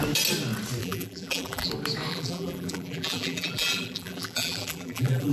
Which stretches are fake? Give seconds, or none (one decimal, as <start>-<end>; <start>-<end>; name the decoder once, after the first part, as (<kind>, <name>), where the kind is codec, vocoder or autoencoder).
0.8-1.7 (vocoder, BigVGAN v2); 2.1-5.3